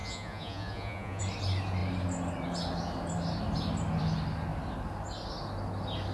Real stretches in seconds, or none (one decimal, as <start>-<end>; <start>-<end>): 1.2-6.1